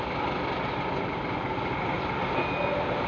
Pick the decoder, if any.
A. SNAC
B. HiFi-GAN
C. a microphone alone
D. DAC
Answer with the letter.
C